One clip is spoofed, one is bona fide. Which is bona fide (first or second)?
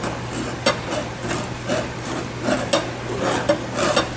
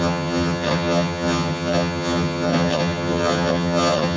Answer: first